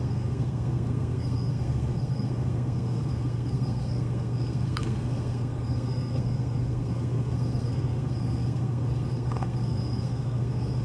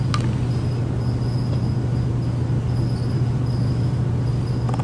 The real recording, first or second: second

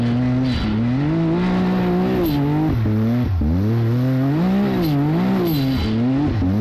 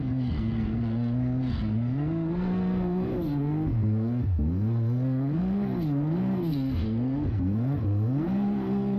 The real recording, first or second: first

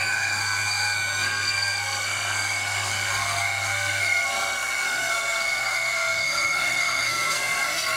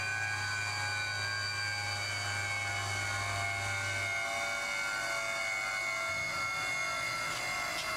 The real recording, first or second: second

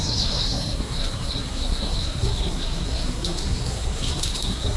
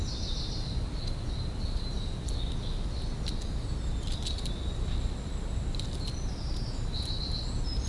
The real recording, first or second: second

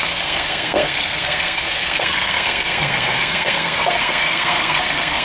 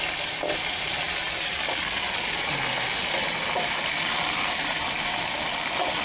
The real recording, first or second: second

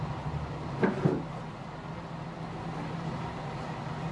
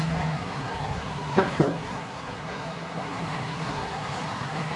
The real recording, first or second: first